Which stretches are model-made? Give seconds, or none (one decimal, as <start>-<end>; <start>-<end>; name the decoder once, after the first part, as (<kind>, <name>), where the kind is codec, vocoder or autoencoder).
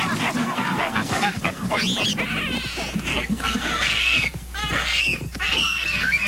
0.4-1.8 (codec, SNAC); 3.1-6.3